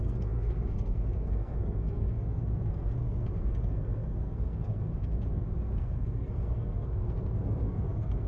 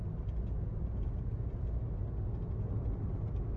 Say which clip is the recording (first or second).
second